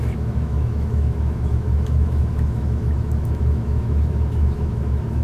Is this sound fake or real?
fake